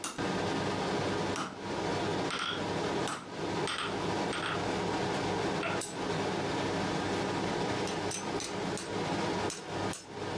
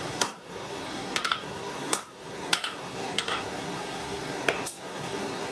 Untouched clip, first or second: first